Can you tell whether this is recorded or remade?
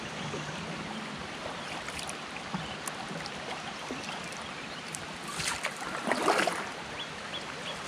recorded